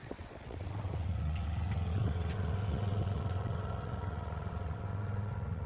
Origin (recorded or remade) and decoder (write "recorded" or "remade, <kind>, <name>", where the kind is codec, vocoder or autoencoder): remade, vocoder, WaveNeXt